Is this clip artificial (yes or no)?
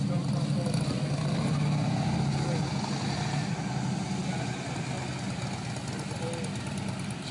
no